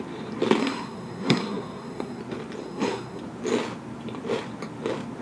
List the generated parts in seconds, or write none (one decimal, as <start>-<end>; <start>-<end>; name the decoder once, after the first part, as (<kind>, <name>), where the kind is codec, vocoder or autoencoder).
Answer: 0.6-2.2 (codec, SNAC); 2.6-3.2